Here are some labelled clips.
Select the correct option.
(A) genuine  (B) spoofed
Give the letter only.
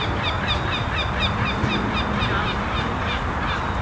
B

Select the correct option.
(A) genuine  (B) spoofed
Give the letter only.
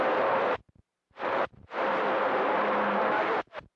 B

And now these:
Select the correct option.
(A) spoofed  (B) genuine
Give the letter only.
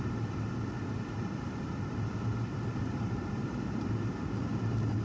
A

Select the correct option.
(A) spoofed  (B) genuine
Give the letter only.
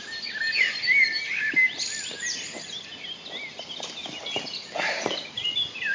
B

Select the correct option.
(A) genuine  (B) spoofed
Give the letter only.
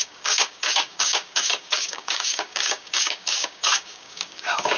B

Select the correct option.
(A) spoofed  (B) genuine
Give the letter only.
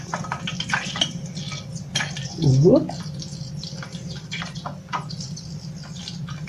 B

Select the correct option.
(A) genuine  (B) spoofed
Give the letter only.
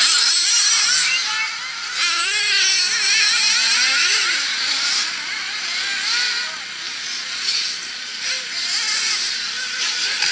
A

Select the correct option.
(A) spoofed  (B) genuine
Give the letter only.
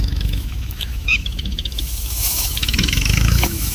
A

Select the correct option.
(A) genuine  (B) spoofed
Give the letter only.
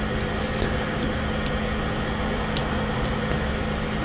A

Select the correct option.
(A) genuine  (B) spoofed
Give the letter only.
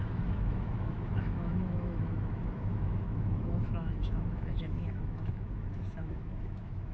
B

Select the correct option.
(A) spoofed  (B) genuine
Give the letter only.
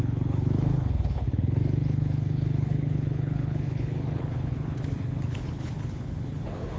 A